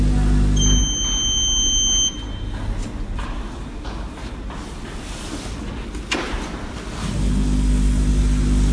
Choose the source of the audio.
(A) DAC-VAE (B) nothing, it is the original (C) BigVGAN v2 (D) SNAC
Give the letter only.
B